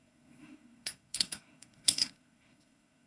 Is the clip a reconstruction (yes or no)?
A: yes